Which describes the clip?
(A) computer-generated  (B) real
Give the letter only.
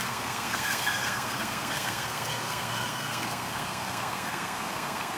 A